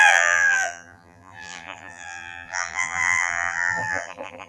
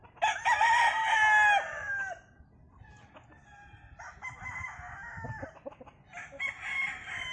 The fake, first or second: first